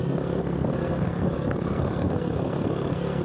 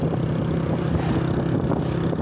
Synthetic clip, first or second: first